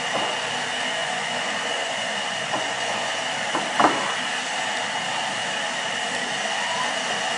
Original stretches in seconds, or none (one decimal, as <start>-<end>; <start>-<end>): 0.0-1.0; 3.1-7.4